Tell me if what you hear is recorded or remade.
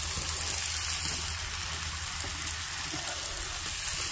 recorded